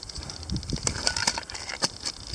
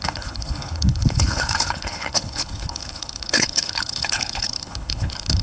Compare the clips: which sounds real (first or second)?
first